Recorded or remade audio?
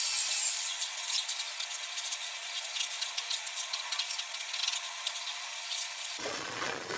remade